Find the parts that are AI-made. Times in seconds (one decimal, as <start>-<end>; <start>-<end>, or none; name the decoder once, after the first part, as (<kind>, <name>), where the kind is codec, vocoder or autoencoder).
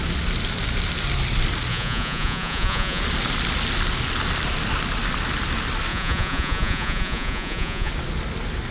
1.7-3.0 (vocoder, Vocos); 5.9-7.9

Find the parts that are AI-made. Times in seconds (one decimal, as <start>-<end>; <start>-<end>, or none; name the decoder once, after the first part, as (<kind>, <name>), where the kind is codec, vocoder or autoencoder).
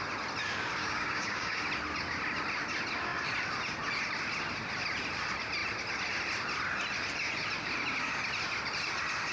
0.8-1.6 (codec, DAC)